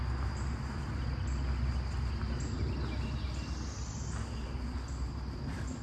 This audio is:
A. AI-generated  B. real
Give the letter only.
B